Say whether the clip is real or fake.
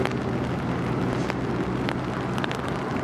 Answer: real